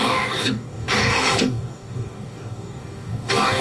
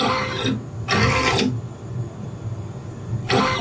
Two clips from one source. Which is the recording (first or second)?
second